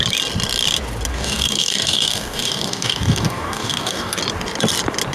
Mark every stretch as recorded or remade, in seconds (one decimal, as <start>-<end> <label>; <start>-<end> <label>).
0.0-1.1 recorded; 1.1-4.2 remade; 4.2-5.1 recorded